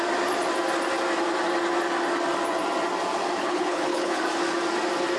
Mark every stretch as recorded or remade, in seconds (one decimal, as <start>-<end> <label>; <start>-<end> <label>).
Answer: 0.0-3.4 recorded; 3.4-4.2 remade; 4.2-5.2 recorded